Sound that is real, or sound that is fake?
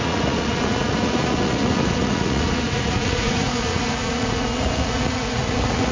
fake